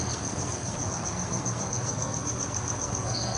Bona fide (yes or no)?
no